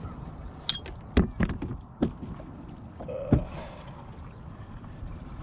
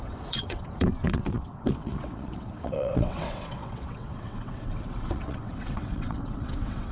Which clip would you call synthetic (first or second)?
second